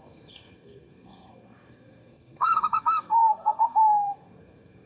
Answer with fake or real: fake